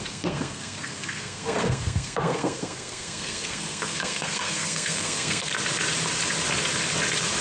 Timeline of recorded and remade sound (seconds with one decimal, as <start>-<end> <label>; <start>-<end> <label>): 0.0-5.5 remade; 5.5-7.4 recorded